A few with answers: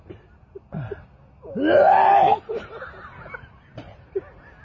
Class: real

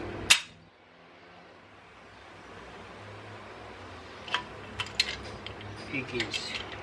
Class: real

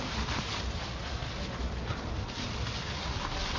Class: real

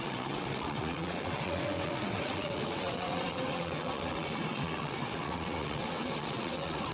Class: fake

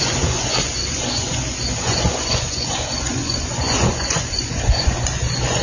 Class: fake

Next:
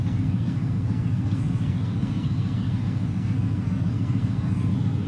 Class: fake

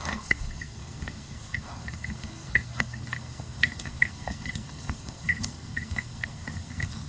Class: fake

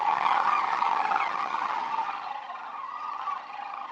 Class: fake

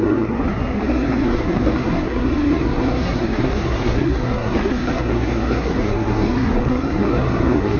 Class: fake